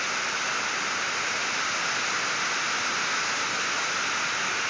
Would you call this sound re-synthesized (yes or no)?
no